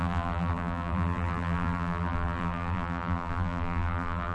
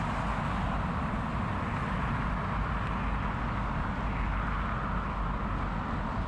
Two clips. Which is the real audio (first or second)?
second